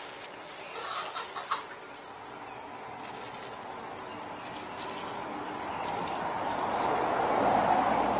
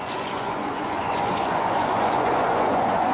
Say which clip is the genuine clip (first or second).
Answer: first